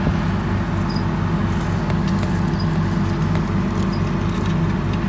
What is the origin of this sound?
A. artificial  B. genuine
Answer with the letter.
B